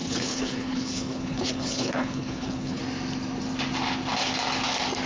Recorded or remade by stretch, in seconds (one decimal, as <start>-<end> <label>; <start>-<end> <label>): 0.0-2.8 remade; 2.8-5.1 recorded

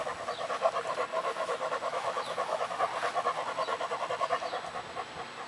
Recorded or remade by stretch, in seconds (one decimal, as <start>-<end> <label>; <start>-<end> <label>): 0.0-1.1 recorded; 1.1-2.7 remade; 2.7-5.5 recorded

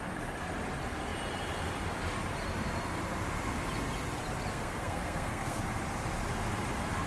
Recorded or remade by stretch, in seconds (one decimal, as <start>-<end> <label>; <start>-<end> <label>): 0.0-4.5 recorded; 4.5-5.6 remade; 5.6-7.1 recorded

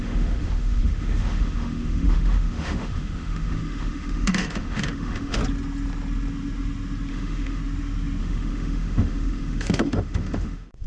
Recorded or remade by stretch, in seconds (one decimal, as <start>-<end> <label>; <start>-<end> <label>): 0.0-5.4 remade; 5.4-7.1 recorded; 7.1-7.6 remade; 7.6-8.2 recorded; 8.2-10.9 remade

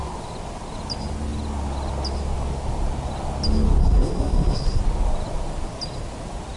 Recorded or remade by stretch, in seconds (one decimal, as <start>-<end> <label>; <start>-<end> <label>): 0.0-3.8 recorded; 3.8-4.8 remade; 4.8-6.6 recorded

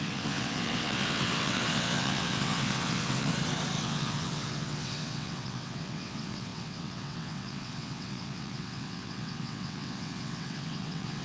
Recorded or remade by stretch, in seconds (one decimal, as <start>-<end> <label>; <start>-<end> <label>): 0.0-3.3 remade; 3.3-3.8 recorded; 3.8-11.2 remade